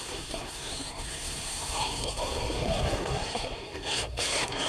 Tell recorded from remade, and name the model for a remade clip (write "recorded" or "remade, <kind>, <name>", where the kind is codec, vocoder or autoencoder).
remade, codec, SNAC